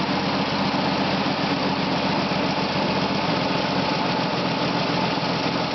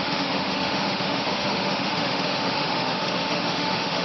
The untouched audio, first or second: first